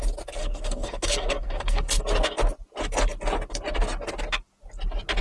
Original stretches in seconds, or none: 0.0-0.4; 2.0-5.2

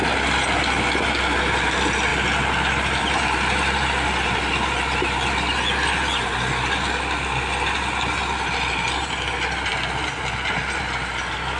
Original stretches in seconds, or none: 0.0-11.6

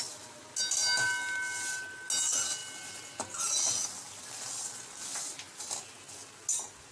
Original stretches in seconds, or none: 0.0-6.9

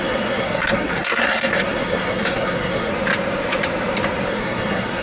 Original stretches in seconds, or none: 2.9-4.3

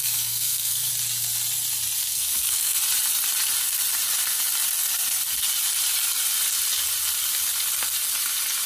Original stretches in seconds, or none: 0.9-2.0; 2.8-8.7

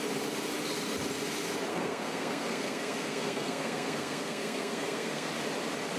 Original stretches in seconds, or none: 0.0-1.7; 5.3-6.0